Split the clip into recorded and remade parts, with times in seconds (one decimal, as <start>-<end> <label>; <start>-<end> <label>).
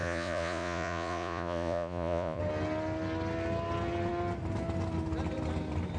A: 0.0-2.4 remade; 2.4-6.0 recorded